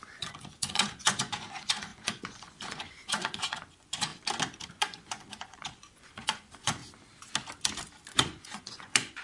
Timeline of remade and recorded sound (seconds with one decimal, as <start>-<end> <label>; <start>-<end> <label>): 0.0-4.1 remade; 4.1-4.7 recorded; 4.7-6.8 remade; 6.8-8.1 recorded; 8.1-9.2 remade